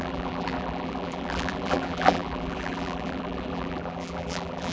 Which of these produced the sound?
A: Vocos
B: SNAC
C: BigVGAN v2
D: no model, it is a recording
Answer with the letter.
C